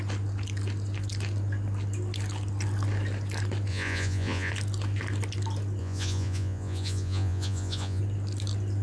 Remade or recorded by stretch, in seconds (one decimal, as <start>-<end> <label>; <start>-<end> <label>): 0.0-3.7 recorded; 3.7-4.5 remade; 4.5-5.8 recorded; 5.8-8.0 remade; 8.0-8.8 recorded